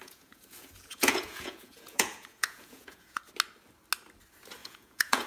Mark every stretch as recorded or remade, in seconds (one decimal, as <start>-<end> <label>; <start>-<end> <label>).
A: 0.0-3.2 remade; 3.2-4.6 recorded; 4.6-5.3 remade

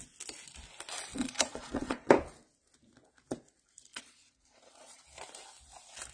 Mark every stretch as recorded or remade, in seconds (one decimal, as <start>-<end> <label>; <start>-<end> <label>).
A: 0.0-1.2 recorded; 1.2-2.1 remade; 2.1-3.9 recorded; 3.9-5.0 remade; 5.0-6.1 recorded

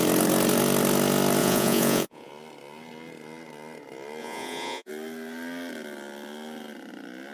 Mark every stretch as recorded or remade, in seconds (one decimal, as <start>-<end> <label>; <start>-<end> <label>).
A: 0.0-1.4 recorded; 1.4-2.3 remade; 2.3-4.2 recorded; 4.2-4.9 remade; 4.9-7.3 recorded

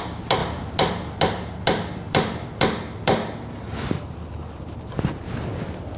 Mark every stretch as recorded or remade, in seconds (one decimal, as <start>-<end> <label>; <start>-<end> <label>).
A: 0.0-6.0 recorded

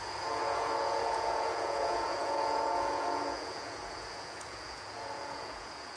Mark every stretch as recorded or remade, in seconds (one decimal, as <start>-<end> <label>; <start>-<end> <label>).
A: 0.0-6.0 remade

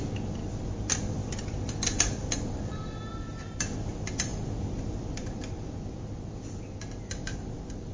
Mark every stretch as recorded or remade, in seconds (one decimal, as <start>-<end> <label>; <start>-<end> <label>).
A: 0.0-7.9 recorded

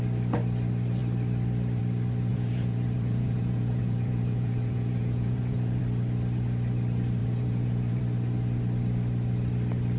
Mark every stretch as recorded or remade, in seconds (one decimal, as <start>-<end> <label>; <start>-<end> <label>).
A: 0.0-2.3 recorded; 2.3-5.8 remade; 5.8-7.2 recorded; 7.2-8.0 remade; 8.0-10.0 recorded

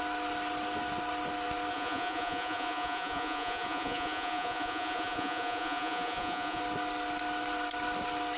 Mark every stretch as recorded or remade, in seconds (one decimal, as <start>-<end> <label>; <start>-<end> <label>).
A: 0.0-1.7 recorded; 1.7-6.6 remade; 6.6-8.4 recorded